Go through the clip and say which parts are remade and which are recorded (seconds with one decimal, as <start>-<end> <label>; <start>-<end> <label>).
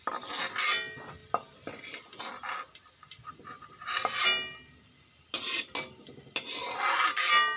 0.0-7.6 recorded